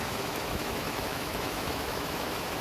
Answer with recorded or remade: remade